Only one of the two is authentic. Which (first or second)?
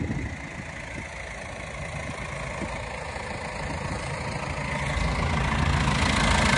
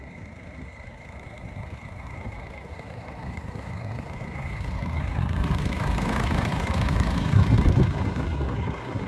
first